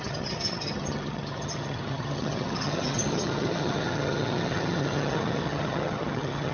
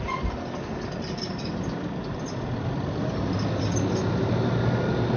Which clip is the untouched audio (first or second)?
second